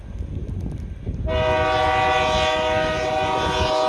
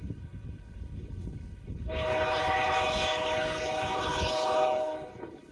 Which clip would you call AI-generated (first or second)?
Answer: second